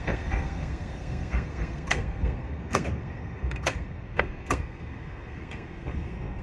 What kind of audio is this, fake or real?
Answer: fake